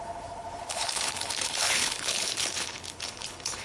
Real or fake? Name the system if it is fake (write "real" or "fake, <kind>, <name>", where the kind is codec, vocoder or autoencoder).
fake, codec, HILCodec